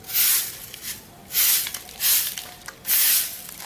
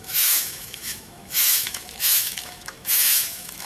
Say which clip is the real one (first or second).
first